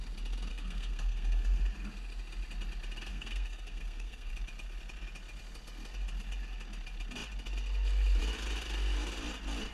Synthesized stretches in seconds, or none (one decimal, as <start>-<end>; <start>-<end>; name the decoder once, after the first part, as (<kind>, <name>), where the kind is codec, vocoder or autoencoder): 0.5-1.6 (codec, SNAC); 3.1-4.3